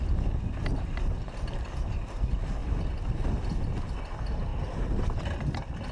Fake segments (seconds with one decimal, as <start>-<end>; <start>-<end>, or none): none